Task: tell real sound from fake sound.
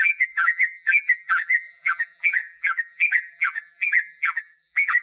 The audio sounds fake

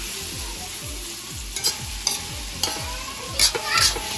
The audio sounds real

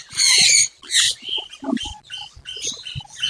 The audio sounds fake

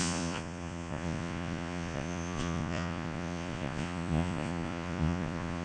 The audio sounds fake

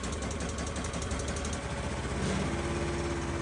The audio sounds real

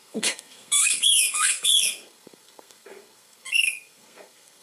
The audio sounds fake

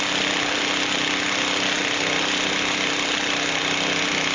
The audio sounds real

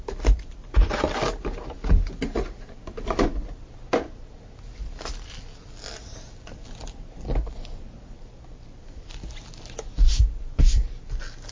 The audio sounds real